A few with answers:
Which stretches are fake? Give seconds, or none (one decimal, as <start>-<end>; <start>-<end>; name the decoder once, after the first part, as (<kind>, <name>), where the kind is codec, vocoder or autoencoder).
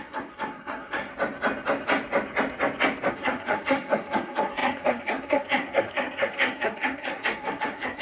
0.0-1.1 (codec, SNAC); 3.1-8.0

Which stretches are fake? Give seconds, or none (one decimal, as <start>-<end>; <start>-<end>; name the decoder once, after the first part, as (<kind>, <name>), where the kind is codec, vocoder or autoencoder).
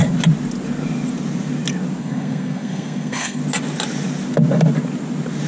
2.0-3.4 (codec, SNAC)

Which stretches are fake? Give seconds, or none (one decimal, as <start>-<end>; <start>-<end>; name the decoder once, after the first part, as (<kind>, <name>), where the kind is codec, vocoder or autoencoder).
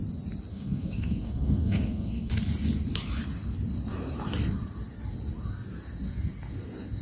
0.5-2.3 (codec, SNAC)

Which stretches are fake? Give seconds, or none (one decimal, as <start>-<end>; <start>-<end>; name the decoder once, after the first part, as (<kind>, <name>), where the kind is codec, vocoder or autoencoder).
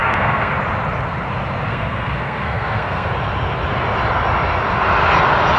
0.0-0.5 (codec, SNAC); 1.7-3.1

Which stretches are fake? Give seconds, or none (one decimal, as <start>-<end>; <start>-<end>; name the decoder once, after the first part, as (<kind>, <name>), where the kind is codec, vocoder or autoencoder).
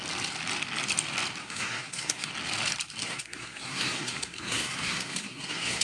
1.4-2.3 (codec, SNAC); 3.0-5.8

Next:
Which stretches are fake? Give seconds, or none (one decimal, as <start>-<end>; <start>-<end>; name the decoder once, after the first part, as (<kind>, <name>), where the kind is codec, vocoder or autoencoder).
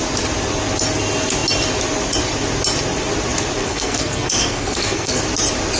3.6-5.2 (codec, SNAC)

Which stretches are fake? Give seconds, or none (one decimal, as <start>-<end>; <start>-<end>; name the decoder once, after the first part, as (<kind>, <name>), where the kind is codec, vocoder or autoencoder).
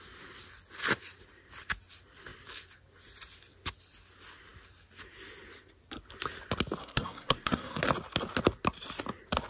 6.8-7.8 (codec, SNAC)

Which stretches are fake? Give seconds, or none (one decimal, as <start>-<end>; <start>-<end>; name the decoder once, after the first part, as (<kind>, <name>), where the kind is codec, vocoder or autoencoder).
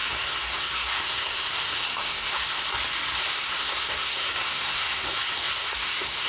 0.0-2.6 (codec, SNAC); 3.2-6.3